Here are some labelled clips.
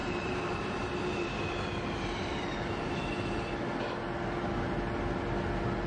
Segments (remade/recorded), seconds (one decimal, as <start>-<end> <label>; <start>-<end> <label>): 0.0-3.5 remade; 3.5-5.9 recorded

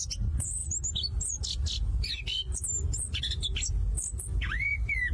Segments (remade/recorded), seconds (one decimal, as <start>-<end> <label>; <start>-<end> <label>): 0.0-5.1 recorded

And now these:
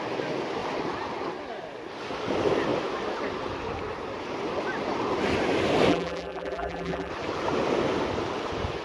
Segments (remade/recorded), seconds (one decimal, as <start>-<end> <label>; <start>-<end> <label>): 0.0-5.9 recorded; 5.9-7.1 remade; 7.1-8.8 recorded